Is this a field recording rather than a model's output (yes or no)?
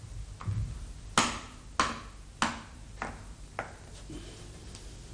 yes